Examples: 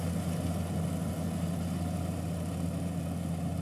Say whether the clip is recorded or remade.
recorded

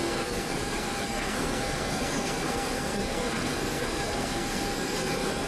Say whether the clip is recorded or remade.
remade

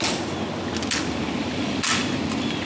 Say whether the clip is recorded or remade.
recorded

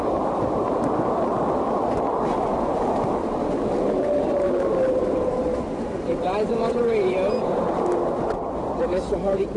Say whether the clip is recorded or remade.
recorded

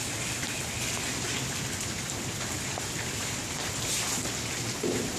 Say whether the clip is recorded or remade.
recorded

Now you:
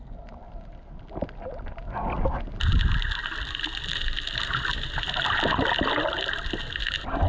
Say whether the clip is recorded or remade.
recorded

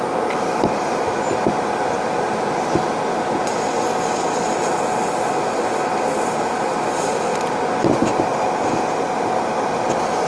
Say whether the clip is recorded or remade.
recorded